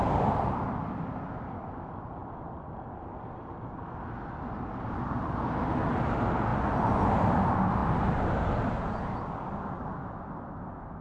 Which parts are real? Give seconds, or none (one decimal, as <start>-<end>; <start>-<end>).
0.0-6.5; 7.1-11.0